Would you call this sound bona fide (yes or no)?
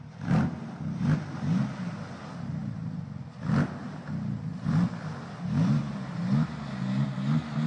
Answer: yes